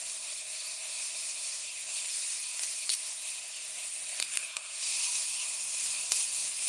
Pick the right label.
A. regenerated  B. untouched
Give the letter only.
A